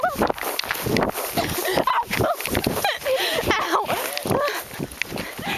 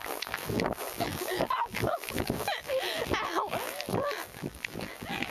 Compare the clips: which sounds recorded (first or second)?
first